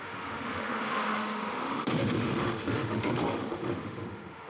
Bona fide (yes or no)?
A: no